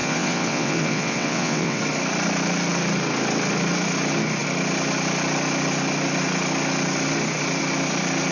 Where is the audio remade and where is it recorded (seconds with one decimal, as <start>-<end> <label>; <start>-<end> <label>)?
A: 0.0-1.8 remade; 1.8-8.3 recorded